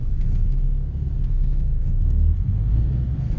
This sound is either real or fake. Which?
fake